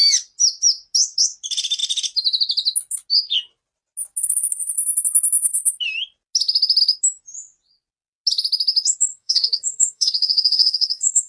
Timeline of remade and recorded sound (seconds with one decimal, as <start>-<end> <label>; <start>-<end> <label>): 0.0-9.1 recorded; 9.1-11.3 remade